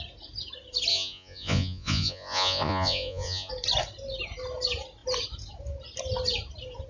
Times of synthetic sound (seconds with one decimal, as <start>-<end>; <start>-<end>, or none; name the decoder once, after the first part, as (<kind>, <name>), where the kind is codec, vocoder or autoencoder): 0.9-3.5 (vocoder, Vocos)